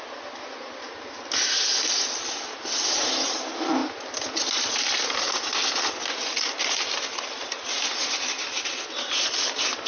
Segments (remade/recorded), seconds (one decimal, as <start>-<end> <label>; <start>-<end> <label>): 0.0-9.9 recorded